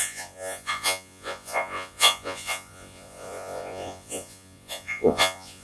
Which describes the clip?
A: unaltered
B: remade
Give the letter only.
B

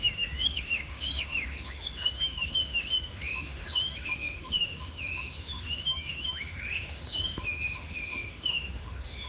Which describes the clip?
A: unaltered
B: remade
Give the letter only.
B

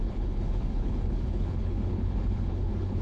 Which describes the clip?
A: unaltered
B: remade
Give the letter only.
B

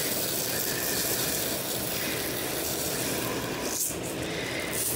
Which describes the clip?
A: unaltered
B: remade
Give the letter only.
A